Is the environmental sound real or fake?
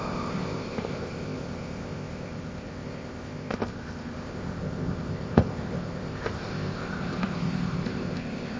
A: fake